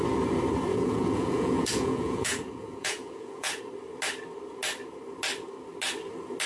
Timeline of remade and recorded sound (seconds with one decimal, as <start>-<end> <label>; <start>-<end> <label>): 0.0-0.7 recorded; 0.7-3.6 remade; 3.6-6.5 recorded